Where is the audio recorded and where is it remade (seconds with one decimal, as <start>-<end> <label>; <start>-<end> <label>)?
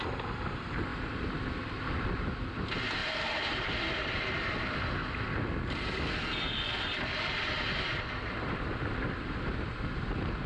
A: 0.0-3.0 recorded; 3.0-4.2 remade; 4.2-10.5 recorded